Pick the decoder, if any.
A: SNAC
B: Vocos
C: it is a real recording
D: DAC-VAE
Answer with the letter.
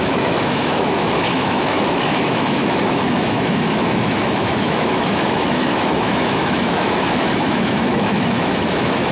D